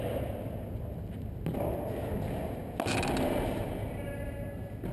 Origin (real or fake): real